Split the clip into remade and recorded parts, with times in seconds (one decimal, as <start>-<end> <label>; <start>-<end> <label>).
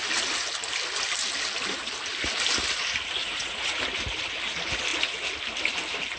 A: 0.0-3.2 recorded; 3.2-3.8 remade; 3.8-6.2 recorded